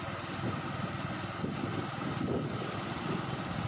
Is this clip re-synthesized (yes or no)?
no